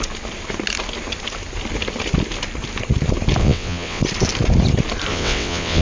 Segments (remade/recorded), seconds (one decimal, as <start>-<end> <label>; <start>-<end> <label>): 0.0-3.4 recorded; 3.4-4.0 remade; 4.0-5.1 recorded; 5.1-5.8 remade